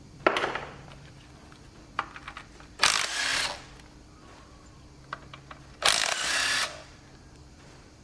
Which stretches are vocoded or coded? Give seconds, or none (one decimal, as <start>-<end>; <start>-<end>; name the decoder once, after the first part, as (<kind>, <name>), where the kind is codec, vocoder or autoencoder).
0.0-3.3 (vocoder, BigVGAN v2); 7.5-8.0